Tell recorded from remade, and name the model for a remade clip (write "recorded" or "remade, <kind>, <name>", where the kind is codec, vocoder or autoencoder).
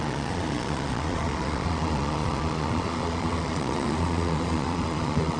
remade, vocoder, Vocos